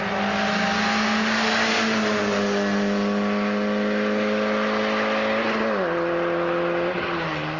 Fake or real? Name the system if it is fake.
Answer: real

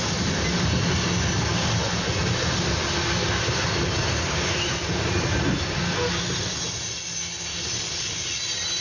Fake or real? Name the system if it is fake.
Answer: real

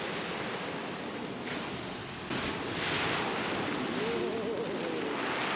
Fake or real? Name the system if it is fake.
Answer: real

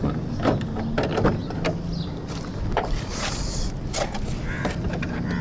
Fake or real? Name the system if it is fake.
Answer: real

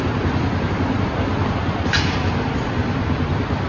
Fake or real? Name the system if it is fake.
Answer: real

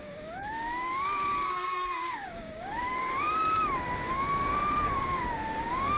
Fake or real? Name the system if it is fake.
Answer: fake, codec, DAC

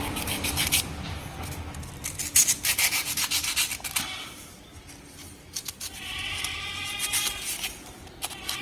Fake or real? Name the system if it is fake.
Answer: real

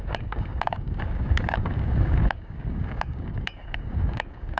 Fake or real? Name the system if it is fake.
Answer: fake, codec, DAC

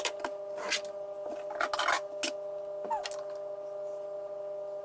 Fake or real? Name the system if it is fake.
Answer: real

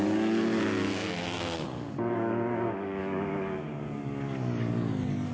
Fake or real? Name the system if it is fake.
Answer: fake, codec, DAC